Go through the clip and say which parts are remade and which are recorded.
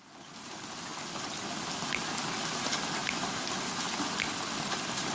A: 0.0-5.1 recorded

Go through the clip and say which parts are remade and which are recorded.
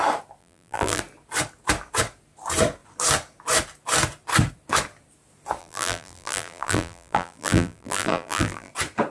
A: 0.0-0.4 recorded; 0.4-1.0 remade; 1.0-5.6 recorded; 5.6-8.7 remade; 8.7-9.1 recorded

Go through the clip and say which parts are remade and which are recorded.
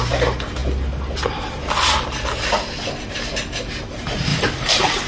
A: 0.0-4.3 recorded; 4.3-5.1 remade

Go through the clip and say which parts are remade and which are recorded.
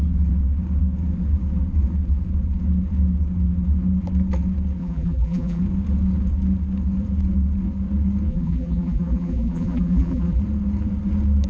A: 0.0-4.8 recorded; 4.8-5.6 remade; 5.6-8.3 recorded; 8.3-10.4 remade; 10.4-11.5 recorded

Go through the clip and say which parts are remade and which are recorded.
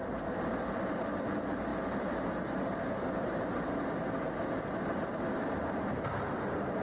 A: 0.0-6.8 recorded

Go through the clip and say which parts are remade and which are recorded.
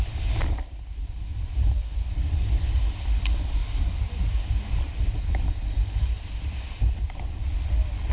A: 0.0-3.6 remade; 3.6-4.8 recorded; 4.8-8.1 remade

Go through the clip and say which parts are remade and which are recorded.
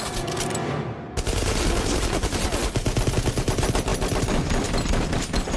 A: 0.0-3.9 recorded; 3.9-5.6 remade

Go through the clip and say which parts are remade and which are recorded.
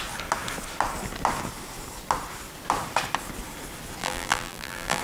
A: 0.0-4.0 recorded; 4.0-5.0 remade